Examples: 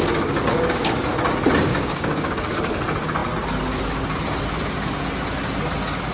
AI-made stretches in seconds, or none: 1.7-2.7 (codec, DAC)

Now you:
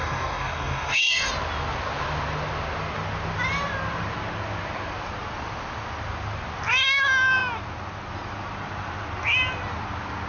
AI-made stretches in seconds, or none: 0.0-1.3 (codec, DAC)

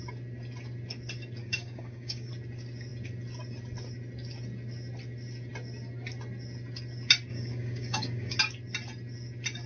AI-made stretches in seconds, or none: 1.4-2.3 (codec, DAC); 7.3-8.4